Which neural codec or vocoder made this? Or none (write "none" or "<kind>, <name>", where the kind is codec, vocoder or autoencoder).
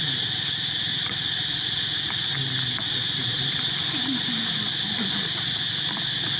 none